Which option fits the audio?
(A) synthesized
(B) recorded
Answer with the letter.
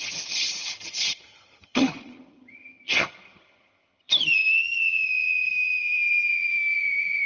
A